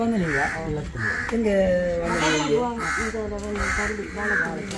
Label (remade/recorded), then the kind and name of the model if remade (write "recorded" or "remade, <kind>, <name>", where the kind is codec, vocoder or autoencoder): recorded